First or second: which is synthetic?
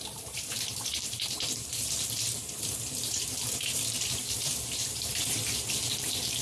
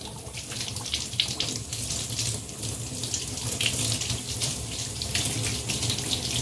first